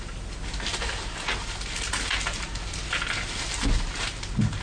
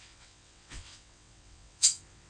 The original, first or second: first